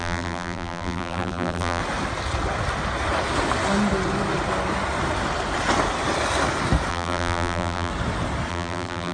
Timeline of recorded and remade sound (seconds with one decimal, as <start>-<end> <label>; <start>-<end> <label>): 0.0-1.8 remade; 1.8-6.9 recorded; 6.9-7.9 remade; 7.9-8.5 recorded; 8.5-9.1 remade